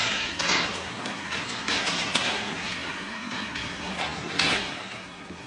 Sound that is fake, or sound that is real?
fake